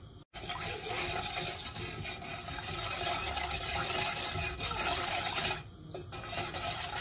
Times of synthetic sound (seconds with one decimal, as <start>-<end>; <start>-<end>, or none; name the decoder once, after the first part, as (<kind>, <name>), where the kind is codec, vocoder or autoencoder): none